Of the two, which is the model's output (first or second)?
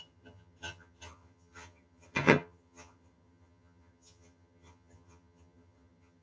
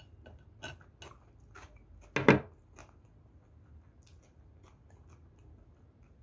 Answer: first